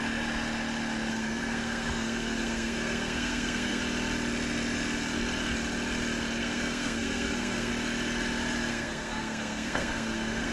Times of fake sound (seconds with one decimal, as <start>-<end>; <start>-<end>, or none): 1.1-3.8; 6.4-7.7; 8.7-10.5